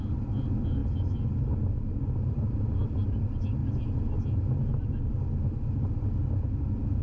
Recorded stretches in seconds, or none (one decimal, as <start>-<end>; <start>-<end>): 0.0-7.0